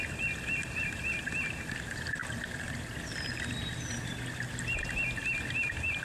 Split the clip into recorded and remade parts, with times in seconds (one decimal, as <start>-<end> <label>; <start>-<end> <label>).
0.0-6.0 recorded